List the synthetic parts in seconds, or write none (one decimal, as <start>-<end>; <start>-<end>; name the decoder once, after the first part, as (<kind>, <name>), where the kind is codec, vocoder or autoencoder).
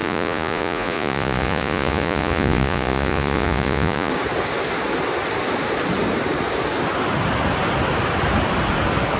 0.0-4.1 (vocoder, Vocos)